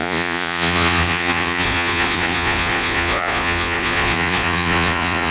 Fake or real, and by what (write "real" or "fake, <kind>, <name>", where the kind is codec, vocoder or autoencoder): fake, vocoder, Vocos